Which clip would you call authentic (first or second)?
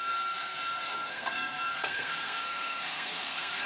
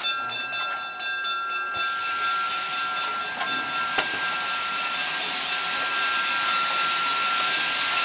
second